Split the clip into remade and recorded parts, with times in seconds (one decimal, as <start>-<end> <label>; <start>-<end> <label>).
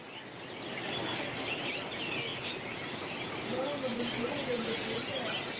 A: 0.0-0.7 recorded; 0.7-1.2 remade; 1.2-2.3 recorded; 2.3-3.0 remade; 3.0-3.9 recorded; 3.9-5.6 remade